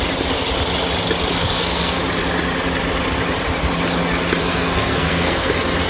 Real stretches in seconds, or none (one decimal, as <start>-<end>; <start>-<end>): 0.0-1.4; 2.0-4.4; 5.5-5.9